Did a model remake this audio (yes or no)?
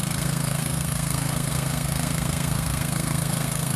yes